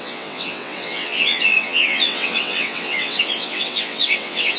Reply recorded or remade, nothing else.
remade